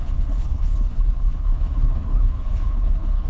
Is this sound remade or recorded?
remade